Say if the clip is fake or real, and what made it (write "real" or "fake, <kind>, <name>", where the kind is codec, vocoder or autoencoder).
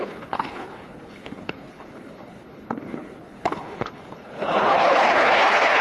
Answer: fake, codec, HILCodec